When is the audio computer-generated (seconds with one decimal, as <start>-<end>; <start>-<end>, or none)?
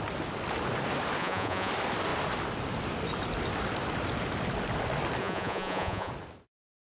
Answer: 1.2-1.7; 5.2-6.1